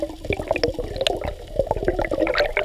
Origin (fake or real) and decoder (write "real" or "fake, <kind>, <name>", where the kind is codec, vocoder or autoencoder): real